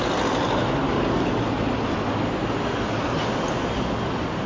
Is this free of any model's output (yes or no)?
yes